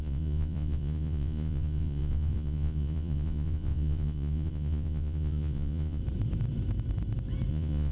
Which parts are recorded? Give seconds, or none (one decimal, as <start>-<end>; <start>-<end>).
6.0-7.5